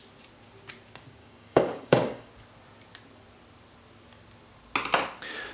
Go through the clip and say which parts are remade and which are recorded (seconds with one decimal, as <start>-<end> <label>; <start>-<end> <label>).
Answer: 0.0-1.2 recorded; 1.2-2.3 remade; 2.3-5.5 recorded

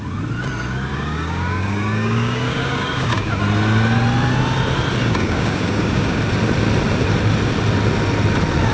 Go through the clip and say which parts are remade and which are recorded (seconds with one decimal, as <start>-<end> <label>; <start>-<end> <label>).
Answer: 0.0-0.9 recorded; 0.9-3.4 remade; 3.4-5.0 recorded; 5.0-6.2 remade; 6.2-8.7 recorded

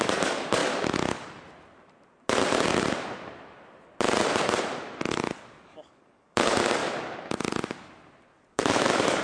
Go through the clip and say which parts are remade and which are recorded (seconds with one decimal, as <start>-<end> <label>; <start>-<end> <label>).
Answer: 0.0-0.6 remade; 0.6-5.6 recorded; 5.6-6.8 remade; 6.8-8.5 recorded; 8.5-9.2 remade

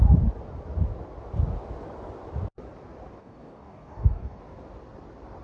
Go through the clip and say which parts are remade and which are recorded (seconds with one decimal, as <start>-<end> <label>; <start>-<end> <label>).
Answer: 0.0-3.2 recorded; 3.2-4.4 remade; 4.4-5.4 recorded

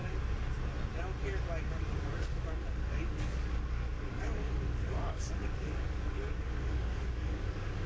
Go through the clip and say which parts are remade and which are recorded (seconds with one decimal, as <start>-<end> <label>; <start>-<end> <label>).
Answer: 0.0-2.2 recorded; 2.2-7.9 remade

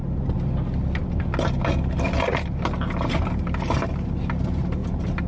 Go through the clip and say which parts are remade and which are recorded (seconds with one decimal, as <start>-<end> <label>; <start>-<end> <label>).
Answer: 0.0-5.3 recorded

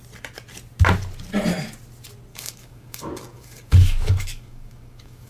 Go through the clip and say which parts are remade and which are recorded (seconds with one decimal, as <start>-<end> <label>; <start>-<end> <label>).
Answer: 0.0-2.3 recorded; 2.3-5.3 remade